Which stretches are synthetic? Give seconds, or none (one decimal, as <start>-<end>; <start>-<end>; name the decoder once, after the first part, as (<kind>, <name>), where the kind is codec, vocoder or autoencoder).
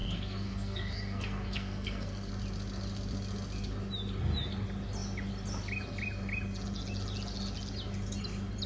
0.0-2.3 (codec, SNAC)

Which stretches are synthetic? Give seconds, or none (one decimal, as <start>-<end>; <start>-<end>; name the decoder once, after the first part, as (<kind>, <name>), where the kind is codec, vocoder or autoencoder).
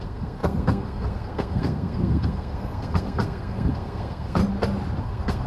0.0-4.4 (codec, SNAC); 5.0-5.5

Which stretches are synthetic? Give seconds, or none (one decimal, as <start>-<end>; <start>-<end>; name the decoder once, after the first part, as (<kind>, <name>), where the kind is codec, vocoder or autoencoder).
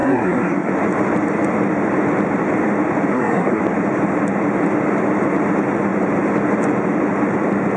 0.0-0.7 (codec, SNAC); 3.1-3.6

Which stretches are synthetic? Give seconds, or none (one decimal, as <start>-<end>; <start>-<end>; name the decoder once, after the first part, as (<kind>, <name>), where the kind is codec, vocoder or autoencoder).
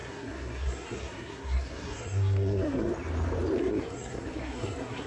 0.0-2.9 (codec, SNAC); 3.6-5.1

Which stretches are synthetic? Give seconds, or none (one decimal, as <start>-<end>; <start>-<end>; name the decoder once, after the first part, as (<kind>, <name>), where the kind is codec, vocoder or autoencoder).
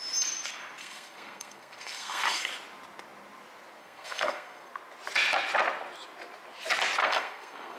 0.8-2.5 (codec, SNAC); 3.8-4.7; 7.0-7.8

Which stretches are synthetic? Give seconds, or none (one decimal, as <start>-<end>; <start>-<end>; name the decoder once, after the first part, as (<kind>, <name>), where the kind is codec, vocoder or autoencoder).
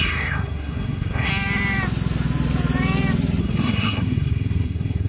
0.0-1.3 (codec, SNAC); 3.4-5.1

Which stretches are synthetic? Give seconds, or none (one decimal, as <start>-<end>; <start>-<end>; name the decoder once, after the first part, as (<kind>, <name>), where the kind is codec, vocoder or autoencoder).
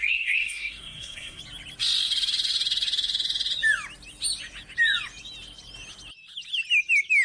0.0-1.4 (codec, SNAC)